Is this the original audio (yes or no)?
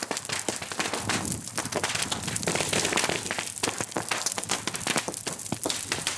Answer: yes